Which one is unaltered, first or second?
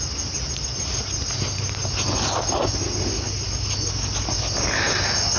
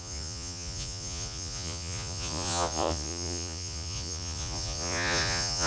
first